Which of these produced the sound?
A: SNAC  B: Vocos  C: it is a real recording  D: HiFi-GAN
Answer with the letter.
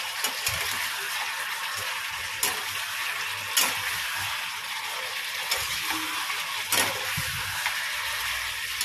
C